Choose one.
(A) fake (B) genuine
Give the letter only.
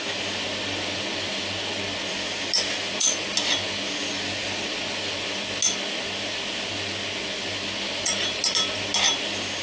B